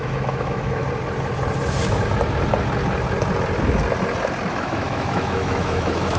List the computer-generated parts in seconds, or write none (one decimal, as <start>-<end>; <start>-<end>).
0.0-0.8; 4.5-6.2